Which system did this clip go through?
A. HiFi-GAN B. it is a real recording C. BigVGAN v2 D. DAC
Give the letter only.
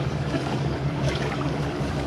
D